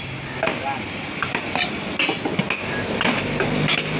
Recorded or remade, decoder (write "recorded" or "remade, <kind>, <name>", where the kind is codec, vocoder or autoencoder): recorded